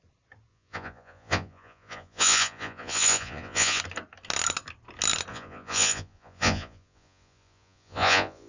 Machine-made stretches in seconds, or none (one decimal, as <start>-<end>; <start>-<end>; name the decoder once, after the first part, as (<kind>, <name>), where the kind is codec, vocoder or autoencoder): 0.5-3.8 (vocoder, Vocos); 5.3-8.5